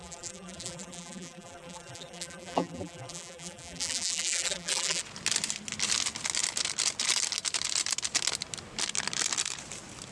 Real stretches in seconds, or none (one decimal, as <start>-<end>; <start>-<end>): 5.0-10.1